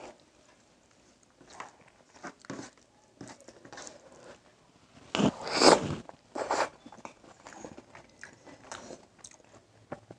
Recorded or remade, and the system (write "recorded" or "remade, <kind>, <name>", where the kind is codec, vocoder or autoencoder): recorded